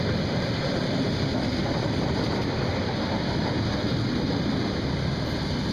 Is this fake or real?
real